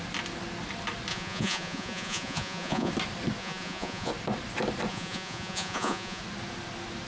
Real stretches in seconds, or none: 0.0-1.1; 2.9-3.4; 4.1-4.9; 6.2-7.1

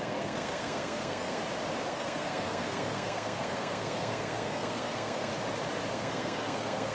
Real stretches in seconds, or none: 1.4-1.9; 5.3-5.9

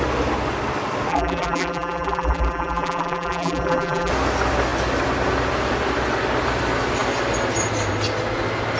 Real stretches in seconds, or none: 0.0-1.1; 4.1-8.8

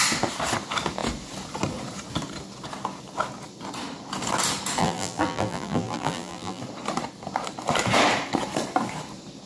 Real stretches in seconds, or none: 0.0-4.8; 6.6-9.5

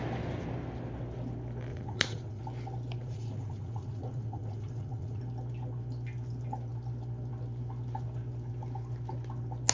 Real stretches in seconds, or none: 0.0-1.7; 2.4-3.0; 5.2-9.7

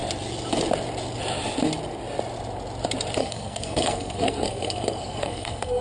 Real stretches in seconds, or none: 0.0-3.2

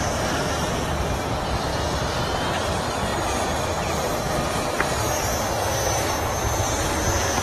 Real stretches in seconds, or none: 0.0-7.4

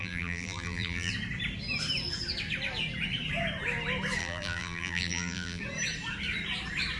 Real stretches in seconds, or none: 1.1-4.2; 5.6-7.0